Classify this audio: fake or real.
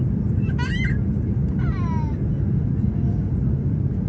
real